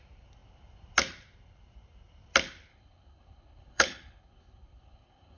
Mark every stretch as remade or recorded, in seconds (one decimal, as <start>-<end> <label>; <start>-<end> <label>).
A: 0.0-2.7 recorded; 2.7-5.4 remade